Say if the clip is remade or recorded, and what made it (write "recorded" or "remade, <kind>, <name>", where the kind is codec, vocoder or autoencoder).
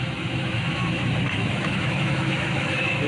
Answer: remade, autoencoder, DAC-VAE